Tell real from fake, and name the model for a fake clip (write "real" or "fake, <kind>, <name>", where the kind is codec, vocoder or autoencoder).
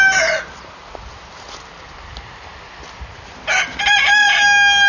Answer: real